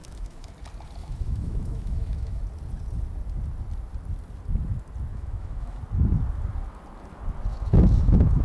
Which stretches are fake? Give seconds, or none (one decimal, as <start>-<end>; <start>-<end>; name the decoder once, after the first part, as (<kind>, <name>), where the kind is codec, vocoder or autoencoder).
0.0-0.5 (autoencoder, DAC-VAE); 1.0-2.4; 5.1-5.8; 7.5-8.4

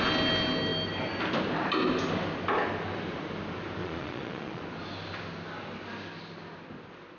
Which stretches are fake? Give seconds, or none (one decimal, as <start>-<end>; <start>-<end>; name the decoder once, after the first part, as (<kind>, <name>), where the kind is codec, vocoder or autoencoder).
3.8-4.6 (vocoder, Vocos)

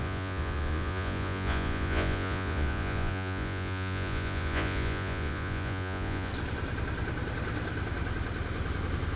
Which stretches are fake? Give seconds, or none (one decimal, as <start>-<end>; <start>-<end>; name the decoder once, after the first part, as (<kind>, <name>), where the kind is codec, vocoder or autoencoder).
0.0-6.3 (vocoder, Vocos)

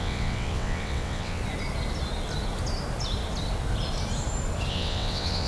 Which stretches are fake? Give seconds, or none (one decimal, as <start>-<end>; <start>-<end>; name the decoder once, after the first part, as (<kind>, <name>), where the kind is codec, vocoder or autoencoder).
0.0-1.4 (vocoder, WaveNeXt); 4.7-5.5

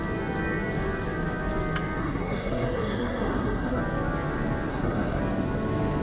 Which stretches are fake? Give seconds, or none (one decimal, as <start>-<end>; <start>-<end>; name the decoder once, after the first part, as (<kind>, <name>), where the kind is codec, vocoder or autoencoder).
2.0-3.8 (codec, SNAC); 4.7-5.2

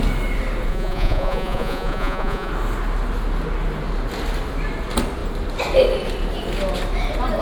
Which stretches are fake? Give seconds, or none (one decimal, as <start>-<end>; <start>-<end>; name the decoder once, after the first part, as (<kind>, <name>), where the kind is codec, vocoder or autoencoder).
0.7-2.5 (vocoder, Vocos)